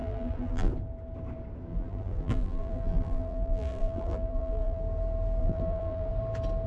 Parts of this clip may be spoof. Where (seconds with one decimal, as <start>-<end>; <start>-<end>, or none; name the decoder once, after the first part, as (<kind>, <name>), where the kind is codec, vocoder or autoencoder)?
0.0-0.7 (vocoder, BigVGAN v2); 1.7-4.8; 5.4-6.1